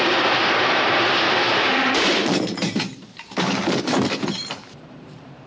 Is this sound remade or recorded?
remade